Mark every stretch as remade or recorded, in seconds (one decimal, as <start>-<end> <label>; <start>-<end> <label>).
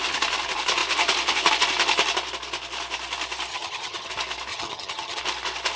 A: 0.0-3.5 recorded; 3.5-4.1 remade; 4.1-4.5 recorded; 4.5-5.2 remade; 5.2-5.8 recorded